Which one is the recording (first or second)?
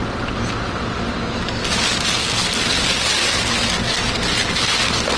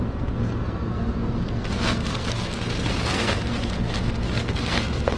first